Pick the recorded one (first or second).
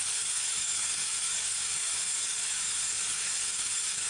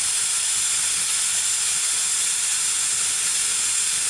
second